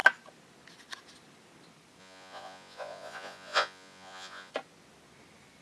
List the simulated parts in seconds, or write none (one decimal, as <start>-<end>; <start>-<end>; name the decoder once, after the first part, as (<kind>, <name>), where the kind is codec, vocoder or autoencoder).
2.0-4.5 (vocoder, Vocos)